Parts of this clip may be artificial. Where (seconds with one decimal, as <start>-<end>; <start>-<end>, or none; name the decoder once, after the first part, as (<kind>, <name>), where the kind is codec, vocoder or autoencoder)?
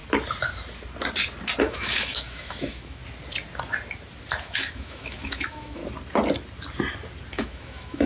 1.6-3.0 (autoencoder, DAC-VAE); 4.3-5.8; 7.3-8.1